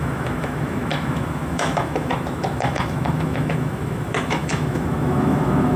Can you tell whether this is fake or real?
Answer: fake